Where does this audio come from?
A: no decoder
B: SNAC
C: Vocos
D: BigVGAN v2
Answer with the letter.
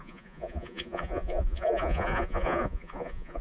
C